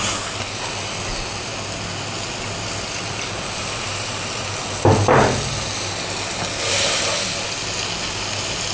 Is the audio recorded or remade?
recorded